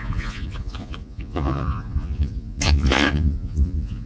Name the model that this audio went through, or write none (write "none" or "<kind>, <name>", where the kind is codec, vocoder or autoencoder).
vocoder, Vocos